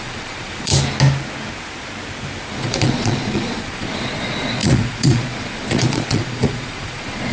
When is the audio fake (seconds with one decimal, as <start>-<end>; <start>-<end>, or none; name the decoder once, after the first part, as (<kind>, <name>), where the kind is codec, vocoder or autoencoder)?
0.0-0.7 (vocoder, Vocos); 2.5-7.3